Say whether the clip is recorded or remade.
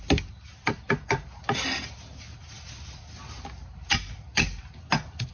recorded